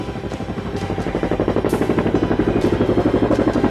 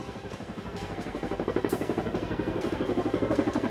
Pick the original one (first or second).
first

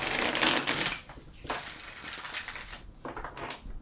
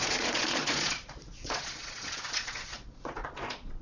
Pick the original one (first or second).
first